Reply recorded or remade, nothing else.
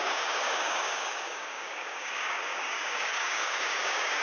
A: remade